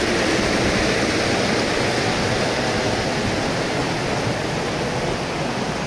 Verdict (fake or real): real